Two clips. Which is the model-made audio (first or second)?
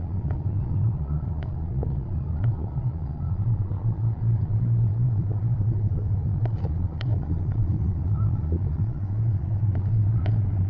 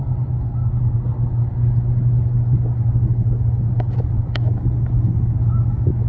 first